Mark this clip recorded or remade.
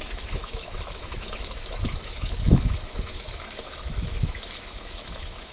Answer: remade